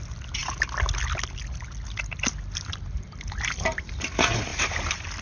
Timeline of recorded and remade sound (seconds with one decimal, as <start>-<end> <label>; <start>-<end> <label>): 0.0-5.2 recorded